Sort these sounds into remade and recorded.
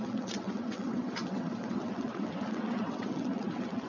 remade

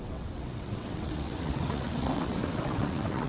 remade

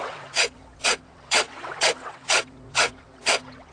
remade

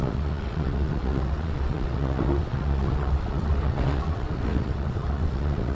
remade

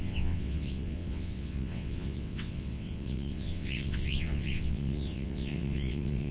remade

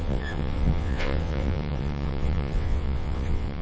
remade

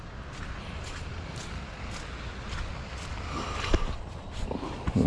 recorded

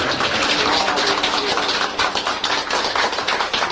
recorded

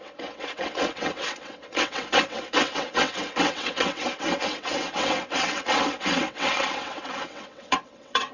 remade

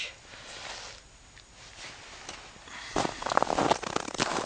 recorded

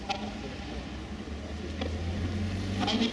recorded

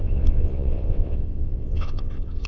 remade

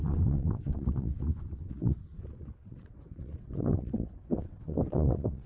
remade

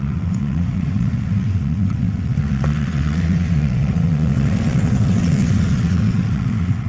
remade